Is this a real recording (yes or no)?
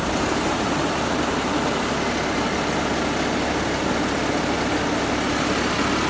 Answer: yes